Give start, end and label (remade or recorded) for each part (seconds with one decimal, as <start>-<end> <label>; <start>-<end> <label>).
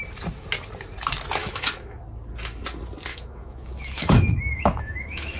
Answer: 0.0-1.4 recorded; 1.4-2.0 remade; 2.0-3.1 recorded; 3.1-5.4 remade